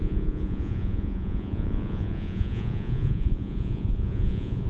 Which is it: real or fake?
fake